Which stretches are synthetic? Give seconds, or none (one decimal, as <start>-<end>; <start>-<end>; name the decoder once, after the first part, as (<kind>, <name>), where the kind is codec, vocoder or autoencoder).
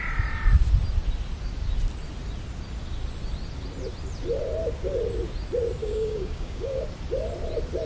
5.8-6.8 (codec, DAC)